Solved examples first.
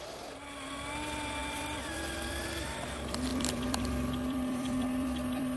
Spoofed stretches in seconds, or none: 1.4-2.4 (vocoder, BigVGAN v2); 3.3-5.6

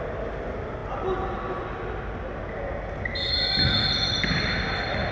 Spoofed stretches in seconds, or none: none